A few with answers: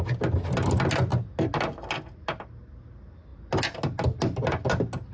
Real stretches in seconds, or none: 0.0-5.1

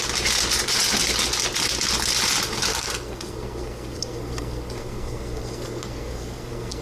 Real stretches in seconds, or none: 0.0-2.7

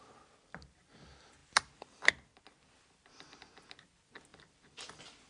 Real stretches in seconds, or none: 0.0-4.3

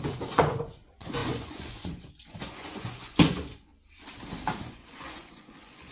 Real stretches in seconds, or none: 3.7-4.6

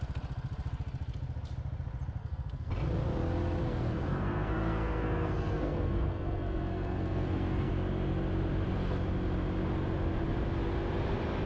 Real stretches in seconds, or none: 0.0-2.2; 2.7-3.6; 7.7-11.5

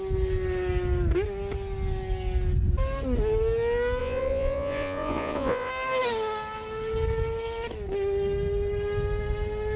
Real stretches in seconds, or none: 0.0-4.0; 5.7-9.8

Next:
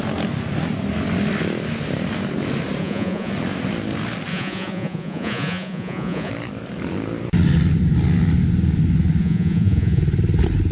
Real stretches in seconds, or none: 0.0-2.8; 3.3-4.3; 6.3-9.2; 10.0-10.7

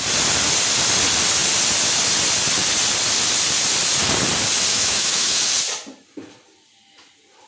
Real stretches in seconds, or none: 0.0-4.7; 5.4-7.5